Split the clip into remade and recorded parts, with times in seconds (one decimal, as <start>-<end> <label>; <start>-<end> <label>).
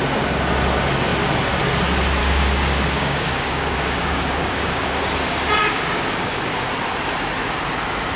0.0-2.2 recorded; 2.2-5.0 remade; 5.0-5.6 recorded; 5.6-6.5 remade; 6.5-8.2 recorded